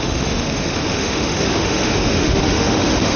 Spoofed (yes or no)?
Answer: yes